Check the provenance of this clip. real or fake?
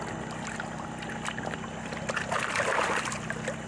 real